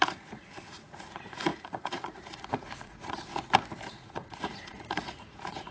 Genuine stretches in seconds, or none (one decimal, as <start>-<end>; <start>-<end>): 3.3-3.9